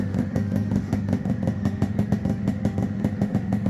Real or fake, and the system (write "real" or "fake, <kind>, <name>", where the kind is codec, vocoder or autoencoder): fake, autoencoder, DAC-VAE